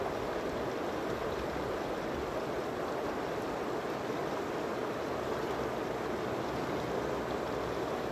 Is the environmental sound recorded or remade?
recorded